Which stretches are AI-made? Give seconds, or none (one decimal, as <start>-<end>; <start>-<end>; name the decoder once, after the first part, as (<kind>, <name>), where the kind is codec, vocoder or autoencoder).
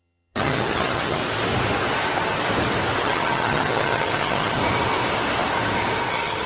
0.0-1.2 (vocoder, HiFi-GAN); 3.0-4.6; 6.1-6.5